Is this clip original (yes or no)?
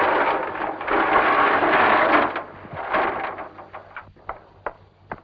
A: yes